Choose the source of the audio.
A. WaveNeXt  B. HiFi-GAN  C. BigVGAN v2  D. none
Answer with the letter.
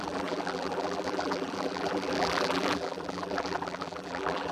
C